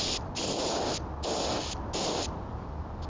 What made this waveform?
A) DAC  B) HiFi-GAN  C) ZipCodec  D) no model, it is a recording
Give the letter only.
D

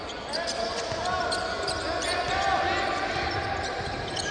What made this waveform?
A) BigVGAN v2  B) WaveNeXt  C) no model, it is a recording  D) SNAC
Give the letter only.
C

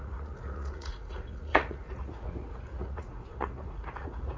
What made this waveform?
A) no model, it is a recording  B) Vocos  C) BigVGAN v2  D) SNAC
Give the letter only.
B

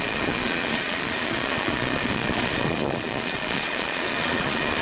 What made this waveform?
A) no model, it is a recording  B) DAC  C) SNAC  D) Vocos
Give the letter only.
D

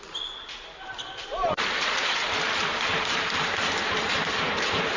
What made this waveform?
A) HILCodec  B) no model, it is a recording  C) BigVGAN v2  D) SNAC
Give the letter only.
B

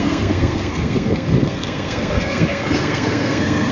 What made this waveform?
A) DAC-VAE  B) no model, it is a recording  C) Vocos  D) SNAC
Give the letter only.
D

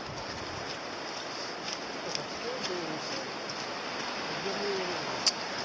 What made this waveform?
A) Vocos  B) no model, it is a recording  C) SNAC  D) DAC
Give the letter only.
B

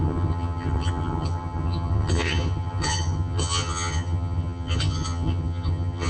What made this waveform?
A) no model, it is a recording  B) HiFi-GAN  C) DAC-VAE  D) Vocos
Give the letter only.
B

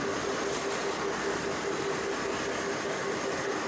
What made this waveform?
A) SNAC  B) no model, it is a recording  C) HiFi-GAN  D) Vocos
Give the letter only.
B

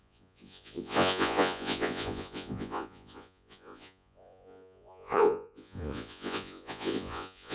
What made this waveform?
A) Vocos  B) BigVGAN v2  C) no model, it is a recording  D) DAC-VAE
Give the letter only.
A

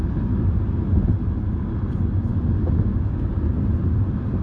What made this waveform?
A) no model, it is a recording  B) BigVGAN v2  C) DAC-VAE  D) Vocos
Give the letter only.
A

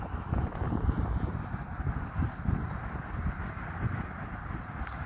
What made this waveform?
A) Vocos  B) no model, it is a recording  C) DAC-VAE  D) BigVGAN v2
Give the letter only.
B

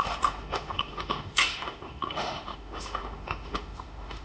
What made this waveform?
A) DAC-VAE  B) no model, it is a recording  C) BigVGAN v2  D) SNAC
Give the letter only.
A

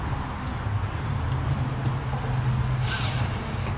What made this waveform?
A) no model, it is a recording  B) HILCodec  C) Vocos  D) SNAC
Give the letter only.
A